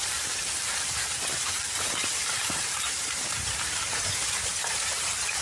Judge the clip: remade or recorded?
remade